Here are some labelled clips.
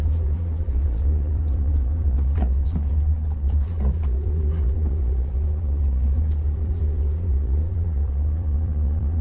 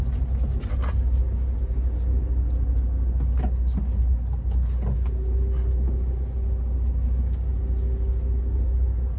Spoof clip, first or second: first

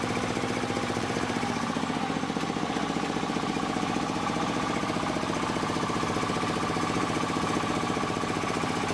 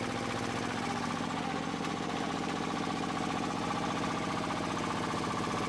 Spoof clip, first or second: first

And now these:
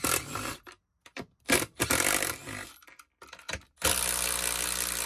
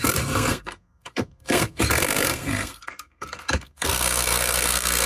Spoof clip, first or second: second